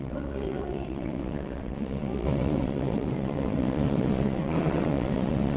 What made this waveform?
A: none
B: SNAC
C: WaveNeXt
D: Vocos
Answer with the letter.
C